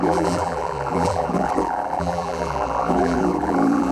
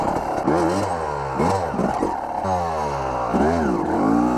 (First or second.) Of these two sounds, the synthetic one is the first